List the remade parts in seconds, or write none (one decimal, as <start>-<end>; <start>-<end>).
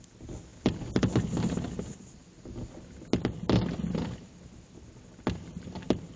none